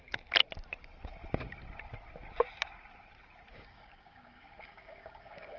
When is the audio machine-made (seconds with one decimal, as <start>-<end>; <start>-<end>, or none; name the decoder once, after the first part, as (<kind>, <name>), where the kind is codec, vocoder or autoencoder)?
3.5-5.6 (codec, DAC)